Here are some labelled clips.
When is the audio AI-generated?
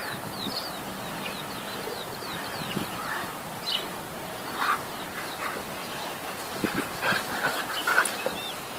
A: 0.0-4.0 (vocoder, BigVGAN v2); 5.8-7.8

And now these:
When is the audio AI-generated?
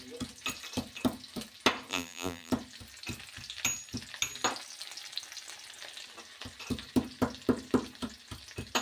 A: 1.9-2.5 (vocoder, BigVGAN v2)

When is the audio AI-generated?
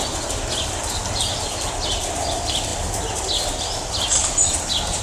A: 4.2-5.0 (vocoder, BigVGAN v2)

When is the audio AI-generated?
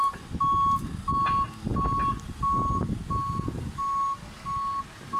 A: none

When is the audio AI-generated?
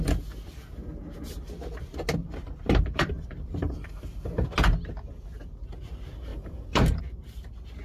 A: 2.2-3.1 (vocoder, BigVGAN v2); 6.3-7.0